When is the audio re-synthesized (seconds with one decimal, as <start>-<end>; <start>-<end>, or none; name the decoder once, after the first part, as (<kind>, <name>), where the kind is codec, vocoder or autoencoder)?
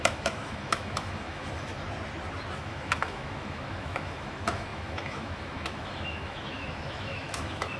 0.0-1.7 (autoencoder, DAC-VAE); 2.6-7.8